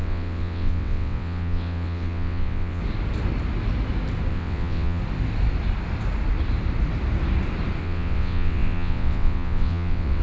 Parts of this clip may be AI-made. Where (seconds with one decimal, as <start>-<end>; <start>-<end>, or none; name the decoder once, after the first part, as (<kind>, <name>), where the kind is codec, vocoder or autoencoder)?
0.0-2.8 (vocoder, WaveNeXt); 4.3-5.0; 7.8-10.2